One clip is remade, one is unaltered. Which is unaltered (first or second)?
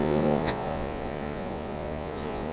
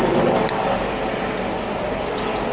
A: second